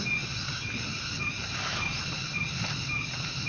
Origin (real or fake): real